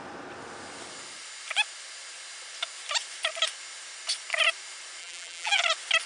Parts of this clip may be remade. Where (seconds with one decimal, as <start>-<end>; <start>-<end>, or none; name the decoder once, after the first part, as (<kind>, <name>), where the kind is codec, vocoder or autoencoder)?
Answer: 5.0-5.6 (vocoder, BigVGAN v2)